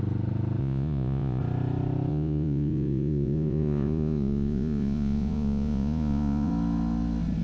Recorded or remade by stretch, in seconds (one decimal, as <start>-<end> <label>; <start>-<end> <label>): 0.0-0.6 recorded; 0.6-1.4 remade; 1.4-2.1 recorded; 2.1-6.5 remade; 6.5-7.4 recorded